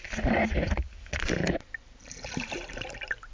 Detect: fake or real real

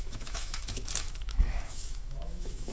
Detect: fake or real fake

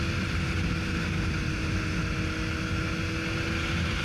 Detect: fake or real real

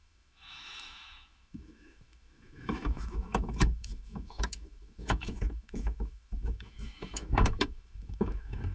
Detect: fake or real fake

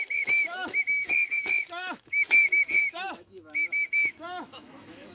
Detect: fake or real fake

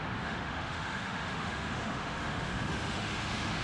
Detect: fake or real fake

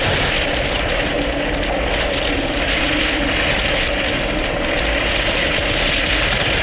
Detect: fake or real real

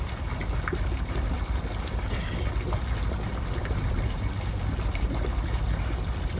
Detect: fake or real real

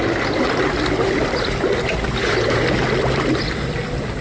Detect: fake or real real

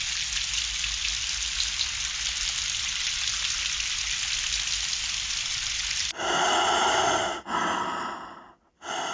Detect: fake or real real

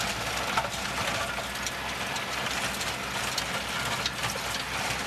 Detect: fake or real real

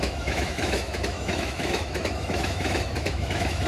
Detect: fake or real fake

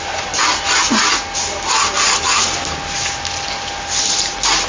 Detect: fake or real real